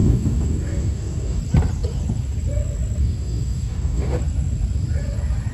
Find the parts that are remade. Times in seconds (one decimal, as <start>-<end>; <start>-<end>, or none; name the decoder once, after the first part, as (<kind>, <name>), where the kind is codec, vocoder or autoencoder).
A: 0.0-1.4 (codec, DAC); 3.0-4.2